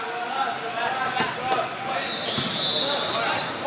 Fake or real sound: real